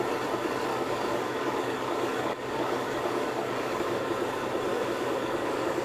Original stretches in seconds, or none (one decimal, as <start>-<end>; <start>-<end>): 0.0-0.7; 4.1-4.7